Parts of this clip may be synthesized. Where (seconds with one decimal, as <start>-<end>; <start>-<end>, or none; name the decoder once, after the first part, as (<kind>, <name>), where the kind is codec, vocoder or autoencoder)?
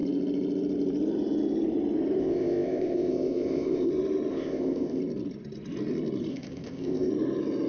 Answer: 2.2-3.9 (codec, ZipCodec); 4.3-5.0; 6.3-7.1